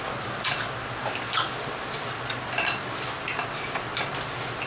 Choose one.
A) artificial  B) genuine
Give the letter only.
B